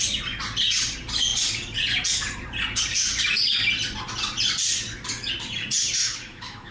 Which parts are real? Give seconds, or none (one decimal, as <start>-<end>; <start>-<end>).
0.0-6.0